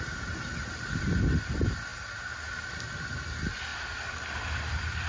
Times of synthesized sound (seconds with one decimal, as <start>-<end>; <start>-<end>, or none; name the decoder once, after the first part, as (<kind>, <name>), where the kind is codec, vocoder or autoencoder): none